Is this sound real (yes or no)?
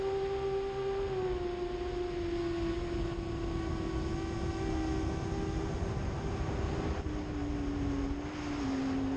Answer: yes